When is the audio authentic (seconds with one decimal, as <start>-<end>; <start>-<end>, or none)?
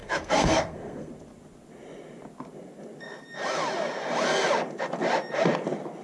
1.1-6.0